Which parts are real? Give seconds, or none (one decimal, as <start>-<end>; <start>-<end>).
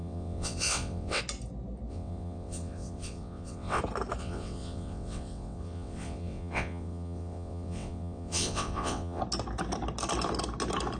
1.2-1.9; 3.8-4.2; 9.2-11.0